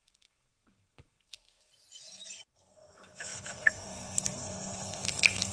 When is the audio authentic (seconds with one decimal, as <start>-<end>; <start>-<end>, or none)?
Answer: 1.7-2.5